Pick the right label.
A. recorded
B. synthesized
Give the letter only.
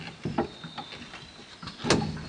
A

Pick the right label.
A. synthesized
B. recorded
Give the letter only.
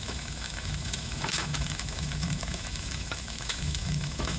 A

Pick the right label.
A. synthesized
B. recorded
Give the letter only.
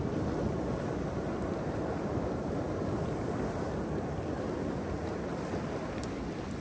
B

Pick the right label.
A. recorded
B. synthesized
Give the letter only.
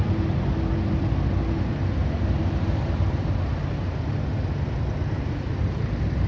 A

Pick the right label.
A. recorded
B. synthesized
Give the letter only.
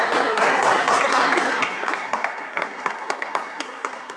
B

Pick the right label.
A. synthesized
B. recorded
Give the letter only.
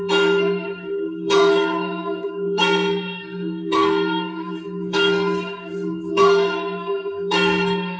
A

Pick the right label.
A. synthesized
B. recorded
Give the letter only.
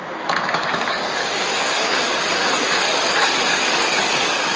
A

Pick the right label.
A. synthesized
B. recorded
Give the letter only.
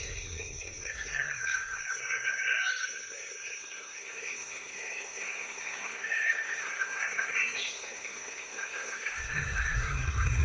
A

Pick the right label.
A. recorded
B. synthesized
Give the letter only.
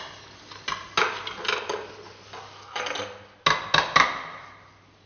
A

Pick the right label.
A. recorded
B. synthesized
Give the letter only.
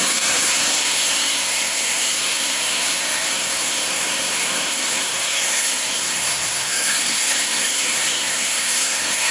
B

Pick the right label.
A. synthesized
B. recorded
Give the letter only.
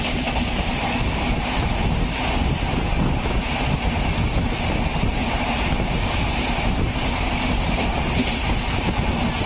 B